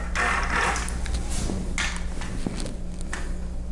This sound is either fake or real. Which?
real